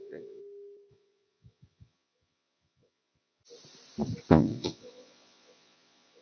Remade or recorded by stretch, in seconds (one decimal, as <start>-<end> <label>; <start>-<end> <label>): 0.0-0.4 remade; 0.4-0.9 recorded; 0.9-3.4 remade; 3.4-4.3 recorded; 4.3-6.2 remade

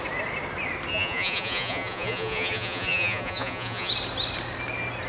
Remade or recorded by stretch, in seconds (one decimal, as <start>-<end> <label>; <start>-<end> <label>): 0.0-0.9 recorded; 0.9-3.9 remade; 3.9-5.1 recorded

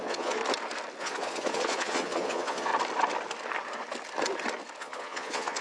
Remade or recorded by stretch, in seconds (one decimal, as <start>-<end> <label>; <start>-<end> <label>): 0.0-0.4 remade; 0.4-1.0 recorded; 1.0-2.7 remade; 2.7-4.8 recorded; 4.8-5.6 remade

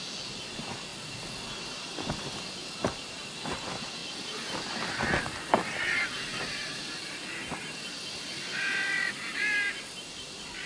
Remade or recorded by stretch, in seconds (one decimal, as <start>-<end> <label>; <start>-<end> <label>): 0.0-10.7 recorded

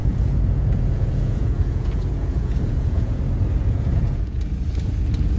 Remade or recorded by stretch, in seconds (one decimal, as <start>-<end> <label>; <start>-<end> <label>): 0.0-3.2 remade; 3.2-3.6 recorded; 3.6-4.4 remade; 4.4-5.4 recorded

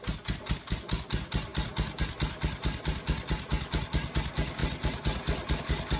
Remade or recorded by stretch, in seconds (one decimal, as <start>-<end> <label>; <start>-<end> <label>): 0.0-6.0 recorded

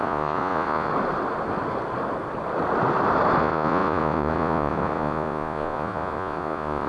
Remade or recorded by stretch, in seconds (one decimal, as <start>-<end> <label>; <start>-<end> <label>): 0.0-0.9 remade; 0.9-3.4 recorded; 3.4-6.9 remade